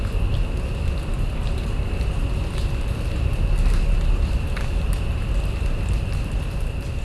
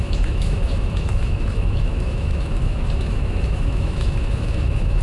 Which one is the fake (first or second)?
second